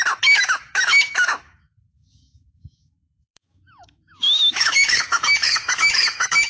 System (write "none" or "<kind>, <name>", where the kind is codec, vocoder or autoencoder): autoencoder, DAC-VAE